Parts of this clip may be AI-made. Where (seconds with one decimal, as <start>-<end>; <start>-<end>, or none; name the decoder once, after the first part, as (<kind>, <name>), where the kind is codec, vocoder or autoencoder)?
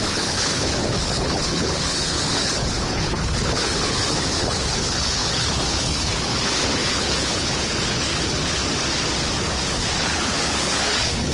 0.0-8.6 (codec, HILCodec); 10.0-11.3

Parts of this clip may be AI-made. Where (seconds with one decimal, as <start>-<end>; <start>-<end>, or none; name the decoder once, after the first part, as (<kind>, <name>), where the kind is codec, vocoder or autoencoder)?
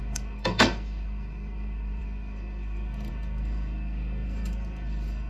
0.0-5.3 (codec, SNAC)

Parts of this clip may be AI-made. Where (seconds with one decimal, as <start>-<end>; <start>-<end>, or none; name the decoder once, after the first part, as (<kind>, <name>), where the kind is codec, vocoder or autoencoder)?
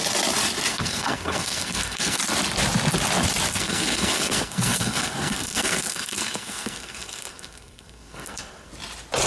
0.7-2.2 (codec, SNAC); 3.5-8.7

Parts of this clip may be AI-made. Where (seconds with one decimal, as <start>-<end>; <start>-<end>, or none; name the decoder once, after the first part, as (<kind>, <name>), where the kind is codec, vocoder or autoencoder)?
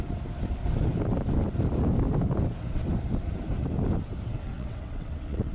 4.3-5.5 (vocoder, WaveNeXt)